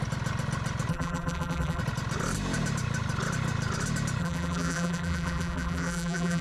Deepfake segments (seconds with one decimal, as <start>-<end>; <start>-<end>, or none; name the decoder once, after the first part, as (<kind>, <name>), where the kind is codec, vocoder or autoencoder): 0.9-1.8 (vocoder, BigVGAN v2); 4.2-6.4